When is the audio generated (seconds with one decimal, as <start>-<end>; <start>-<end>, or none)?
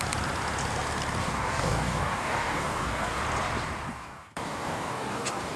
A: 1.2-3.2; 3.9-5.6